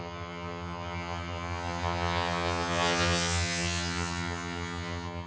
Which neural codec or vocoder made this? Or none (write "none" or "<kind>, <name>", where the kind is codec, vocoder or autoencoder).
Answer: vocoder, HiFi-GAN